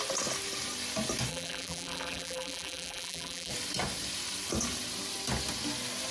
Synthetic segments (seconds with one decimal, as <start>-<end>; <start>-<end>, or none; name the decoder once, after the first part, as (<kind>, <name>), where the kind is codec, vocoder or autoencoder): 1.3-3.5 (vocoder, BigVGAN v2)